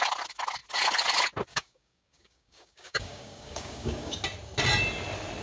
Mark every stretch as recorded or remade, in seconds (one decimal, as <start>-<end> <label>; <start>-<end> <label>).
0.0-1.5 recorded; 1.5-4.2 remade; 4.2-5.4 recorded